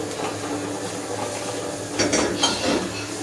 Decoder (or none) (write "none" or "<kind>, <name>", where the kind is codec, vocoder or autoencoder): none